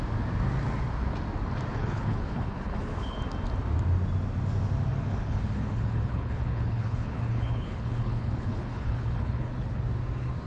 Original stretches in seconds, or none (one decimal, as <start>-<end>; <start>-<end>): 0.0-1.7; 3.2-4.9; 9.8-10.5